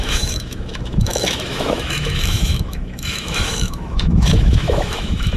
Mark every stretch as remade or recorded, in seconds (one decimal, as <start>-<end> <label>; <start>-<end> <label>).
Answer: 0.0-5.4 remade